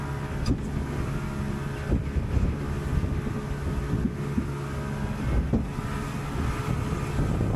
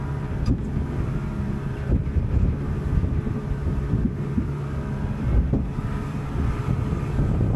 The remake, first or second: second